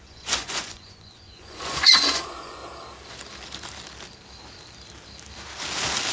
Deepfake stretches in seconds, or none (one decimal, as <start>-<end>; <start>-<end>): 0.0-2.6